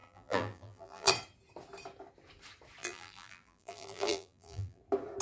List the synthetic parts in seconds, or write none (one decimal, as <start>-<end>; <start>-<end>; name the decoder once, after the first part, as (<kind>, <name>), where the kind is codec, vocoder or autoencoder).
0.0-1.1 (vocoder, BigVGAN v2); 2.8-4.8